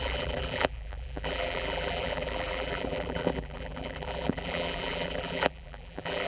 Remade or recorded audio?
remade